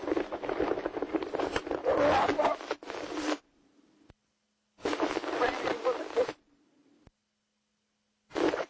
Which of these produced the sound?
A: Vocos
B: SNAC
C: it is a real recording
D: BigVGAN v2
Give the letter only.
C